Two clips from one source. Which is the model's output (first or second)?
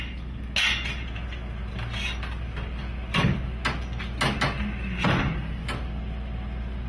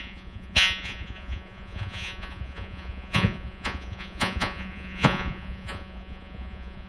second